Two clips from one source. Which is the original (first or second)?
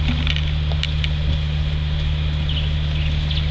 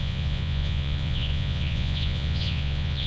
first